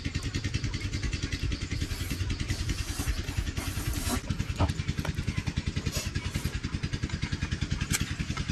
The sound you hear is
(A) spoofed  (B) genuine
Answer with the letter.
B